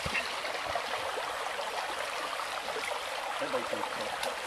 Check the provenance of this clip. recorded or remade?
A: recorded